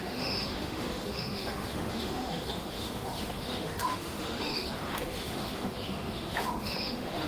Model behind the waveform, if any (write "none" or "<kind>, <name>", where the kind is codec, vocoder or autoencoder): autoencoder, DAC-VAE